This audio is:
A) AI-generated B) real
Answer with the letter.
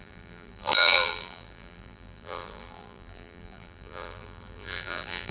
A